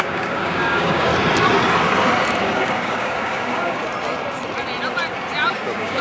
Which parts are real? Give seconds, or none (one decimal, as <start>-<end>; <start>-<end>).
1.1-2.4; 3.8-5.5